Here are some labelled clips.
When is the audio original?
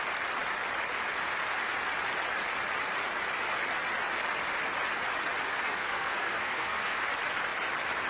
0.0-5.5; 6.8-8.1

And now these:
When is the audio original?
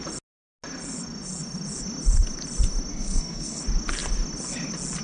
0.0-2.9; 3.6-5.0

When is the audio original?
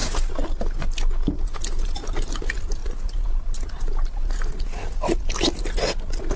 0.0-2.8; 4.5-6.4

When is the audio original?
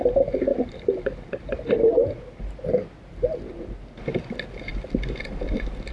0.0-5.9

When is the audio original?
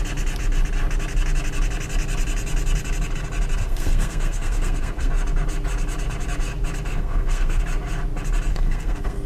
0.0-3.6; 5.1-6.9; 7.6-8.5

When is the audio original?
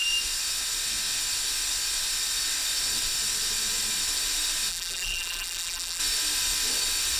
0.0-4.7; 6.0-7.2